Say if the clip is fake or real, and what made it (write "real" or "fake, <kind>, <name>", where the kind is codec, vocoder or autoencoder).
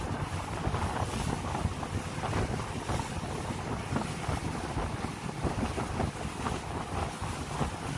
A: real